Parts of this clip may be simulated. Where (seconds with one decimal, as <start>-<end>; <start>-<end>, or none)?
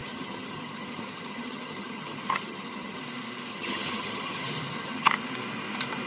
0.0-3.0; 3.5-5.1